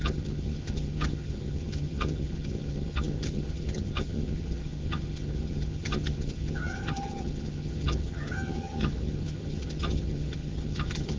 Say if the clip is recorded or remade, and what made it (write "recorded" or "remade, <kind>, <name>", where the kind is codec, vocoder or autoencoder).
remade, vocoder, HiFi-GAN